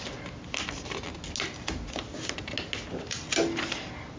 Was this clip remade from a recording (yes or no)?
no